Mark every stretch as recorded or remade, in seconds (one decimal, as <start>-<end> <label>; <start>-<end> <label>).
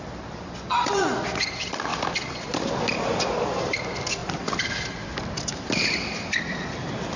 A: 0.0-7.2 recorded